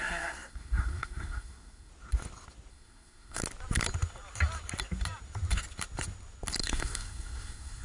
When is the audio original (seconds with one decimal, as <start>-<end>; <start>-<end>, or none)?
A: 1.9-2.7; 3.4-6.6